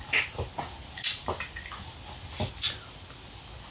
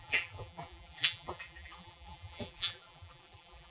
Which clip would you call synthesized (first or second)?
second